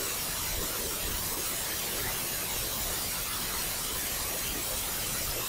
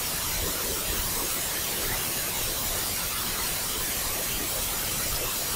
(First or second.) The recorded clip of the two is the first